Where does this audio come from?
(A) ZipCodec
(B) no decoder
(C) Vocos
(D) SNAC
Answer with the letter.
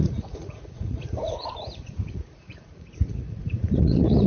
C